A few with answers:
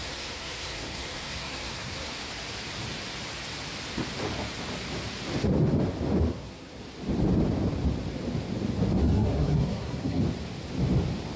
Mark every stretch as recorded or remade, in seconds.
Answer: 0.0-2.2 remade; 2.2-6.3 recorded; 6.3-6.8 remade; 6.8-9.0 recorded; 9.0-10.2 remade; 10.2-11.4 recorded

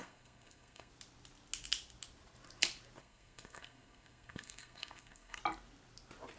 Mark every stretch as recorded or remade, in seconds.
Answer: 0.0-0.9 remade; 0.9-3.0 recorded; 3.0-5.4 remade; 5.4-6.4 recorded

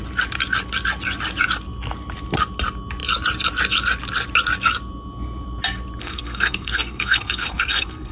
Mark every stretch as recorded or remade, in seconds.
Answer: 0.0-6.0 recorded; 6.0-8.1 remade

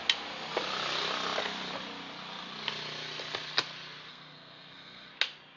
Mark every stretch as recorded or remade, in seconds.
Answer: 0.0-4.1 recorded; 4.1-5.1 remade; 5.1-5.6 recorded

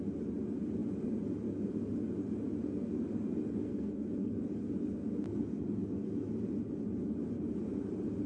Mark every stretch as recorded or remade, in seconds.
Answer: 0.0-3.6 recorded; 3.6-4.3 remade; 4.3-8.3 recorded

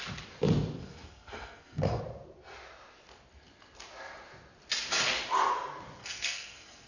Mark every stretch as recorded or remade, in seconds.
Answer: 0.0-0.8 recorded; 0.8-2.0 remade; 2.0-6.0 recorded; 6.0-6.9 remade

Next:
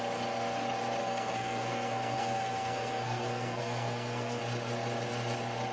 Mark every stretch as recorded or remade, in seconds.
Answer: 0.0-1.0 recorded; 1.0-4.4 remade; 4.4-5.7 recorded

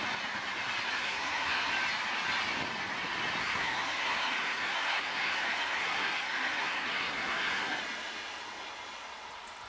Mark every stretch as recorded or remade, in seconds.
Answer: 0.0-0.9 recorded; 0.9-1.7 remade; 1.7-3.4 recorded; 3.4-7.8 remade; 7.8-9.7 recorded